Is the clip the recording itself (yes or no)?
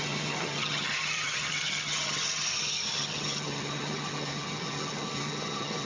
no